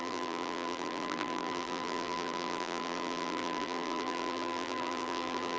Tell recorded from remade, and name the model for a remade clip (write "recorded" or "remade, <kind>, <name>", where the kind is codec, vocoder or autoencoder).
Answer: remade, vocoder, BigVGAN v2